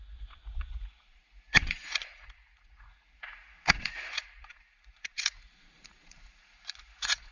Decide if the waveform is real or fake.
fake